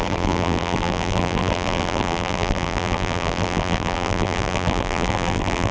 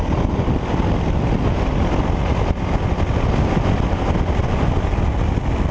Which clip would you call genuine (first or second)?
second